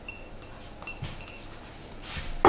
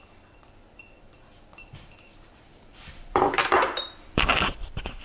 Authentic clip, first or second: first